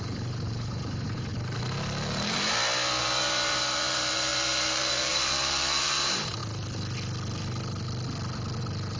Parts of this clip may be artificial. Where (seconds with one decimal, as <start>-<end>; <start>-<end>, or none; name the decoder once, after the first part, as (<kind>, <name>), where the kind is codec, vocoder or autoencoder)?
0.0-1.3 (vocoder, BigVGAN v2); 3.0-6.4